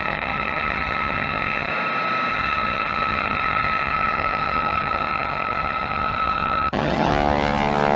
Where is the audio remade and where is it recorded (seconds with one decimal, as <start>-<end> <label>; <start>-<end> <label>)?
0.0-1.7 remade; 1.7-2.3 recorded; 2.3-7.1 remade; 7.1-8.0 recorded